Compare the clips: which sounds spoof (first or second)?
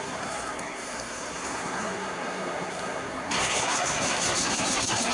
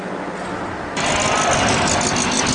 first